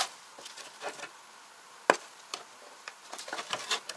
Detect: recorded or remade recorded